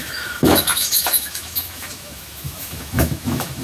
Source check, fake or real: fake